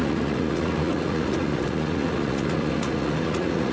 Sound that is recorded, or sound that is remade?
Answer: remade